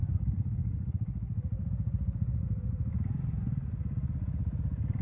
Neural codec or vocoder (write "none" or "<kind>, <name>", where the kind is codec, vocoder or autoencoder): vocoder, BigVGAN v2